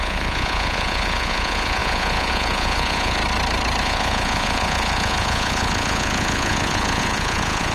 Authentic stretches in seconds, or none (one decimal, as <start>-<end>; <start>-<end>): 3.2-3.8